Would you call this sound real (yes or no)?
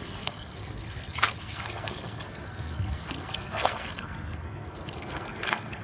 no